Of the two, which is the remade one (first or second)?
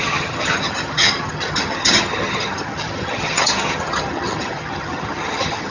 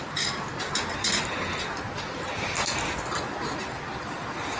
first